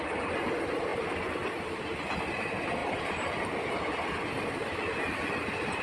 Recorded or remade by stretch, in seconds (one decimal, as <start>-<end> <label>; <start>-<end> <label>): 0.0-5.8 recorded